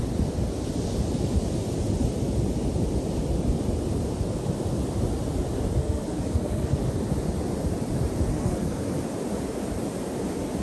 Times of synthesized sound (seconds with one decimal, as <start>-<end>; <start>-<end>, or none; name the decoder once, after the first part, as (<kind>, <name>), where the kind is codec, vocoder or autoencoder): 5.8-6.8 (codec, SNAC); 8.3-9.0